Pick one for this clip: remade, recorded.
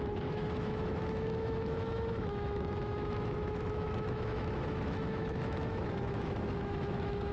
remade